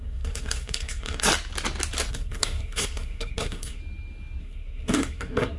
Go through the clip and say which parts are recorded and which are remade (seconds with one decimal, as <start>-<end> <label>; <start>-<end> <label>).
0.0-1.3 remade; 1.3-2.1 recorded; 2.1-3.8 remade; 3.8-4.4 recorded; 4.4-5.6 remade